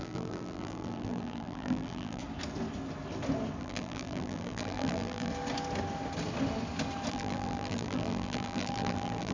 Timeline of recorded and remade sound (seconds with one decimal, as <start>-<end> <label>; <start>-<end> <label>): 0.0-2.2 remade; 2.2-3.6 recorded; 3.6-5.3 remade; 5.3-7.1 recorded; 7.1-9.3 remade